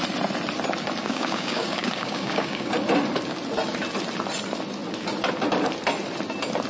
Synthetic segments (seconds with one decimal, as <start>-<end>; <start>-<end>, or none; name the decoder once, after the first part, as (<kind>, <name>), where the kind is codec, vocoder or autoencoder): 1.0-2.7 (codec, DAC)